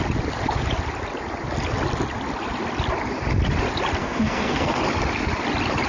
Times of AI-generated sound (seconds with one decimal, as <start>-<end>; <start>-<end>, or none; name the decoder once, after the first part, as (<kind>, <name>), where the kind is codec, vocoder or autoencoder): 4.0-4.8 (codec, SNAC)